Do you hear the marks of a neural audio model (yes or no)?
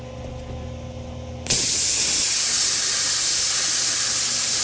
no